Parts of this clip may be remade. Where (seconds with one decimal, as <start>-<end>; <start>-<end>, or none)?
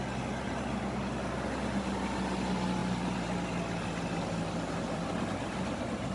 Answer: none